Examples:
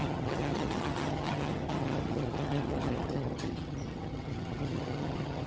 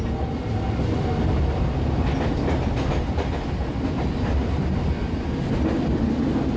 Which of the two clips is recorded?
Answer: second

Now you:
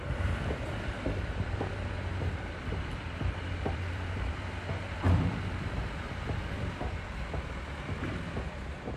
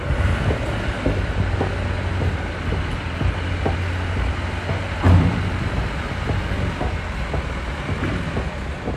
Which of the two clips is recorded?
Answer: second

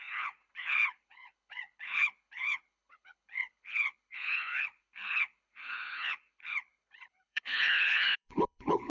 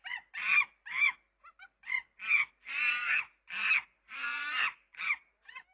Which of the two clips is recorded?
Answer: second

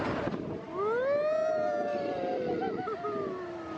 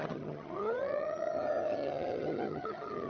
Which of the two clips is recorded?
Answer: first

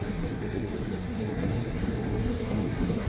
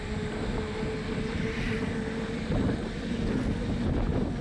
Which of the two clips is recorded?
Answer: second